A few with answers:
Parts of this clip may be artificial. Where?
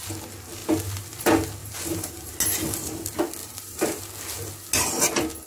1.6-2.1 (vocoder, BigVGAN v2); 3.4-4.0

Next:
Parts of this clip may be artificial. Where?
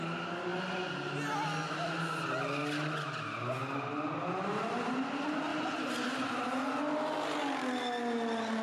5.5-6.7 (vocoder, BigVGAN v2)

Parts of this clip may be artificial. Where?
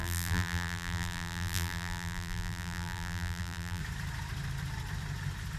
0.0-3.8 (vocoder, BigVGAN v2)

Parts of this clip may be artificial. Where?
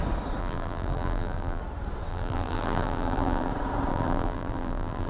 0.4-1.6 (vocoder, BigVGAN v2); 2.1-3.5; 3.9-5.1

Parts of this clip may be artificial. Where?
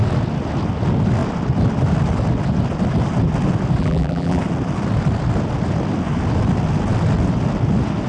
3.8-4.4 (vocoder, BigVGAN v2)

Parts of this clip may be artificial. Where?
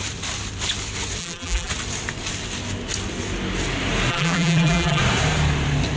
1.2-1.7 (vocoder, BigVGAN v2); 4.1-5.0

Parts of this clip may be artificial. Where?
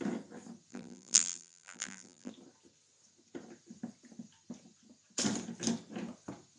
0.7-2.3 (vocoder, BigVGAN v2)